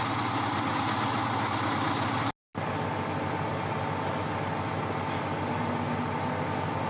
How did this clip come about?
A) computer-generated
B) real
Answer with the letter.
B